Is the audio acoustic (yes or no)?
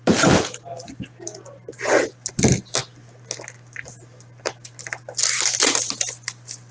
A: yes